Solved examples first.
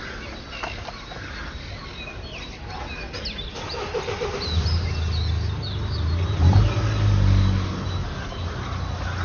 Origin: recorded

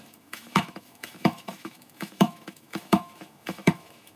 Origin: remade